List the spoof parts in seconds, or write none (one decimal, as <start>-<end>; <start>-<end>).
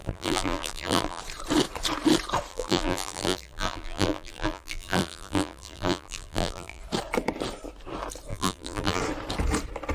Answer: 0.0-1.2; 2.5-6.8; 8.3-9.0